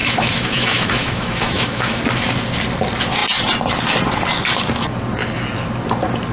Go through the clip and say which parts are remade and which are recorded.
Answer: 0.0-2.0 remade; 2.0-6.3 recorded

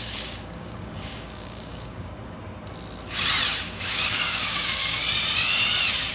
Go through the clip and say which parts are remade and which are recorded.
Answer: 0.0-2.1 remade; 2.1-3.8 recorded; 3.8-5.0 remade; 5.0-6.1 recorded

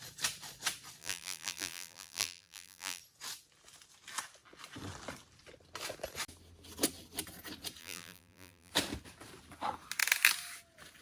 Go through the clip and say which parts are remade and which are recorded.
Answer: 0.0-1.0 recorded; 1.0-3.0 remade; 3.0-7.8 recorded; 7.8-8.7 remade; 8.7-11.0 recorded

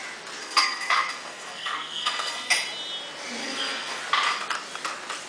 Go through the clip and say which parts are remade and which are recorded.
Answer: 0.0-0.4 recorded; 0.4-2.5 remade; 2.5-3.4 recorded; 3.4-4.0 remade; 4.0-5.3 recorded